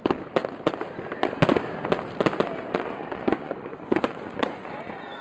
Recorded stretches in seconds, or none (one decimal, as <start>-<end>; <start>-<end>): 0.0-2.6; 4.8-5.2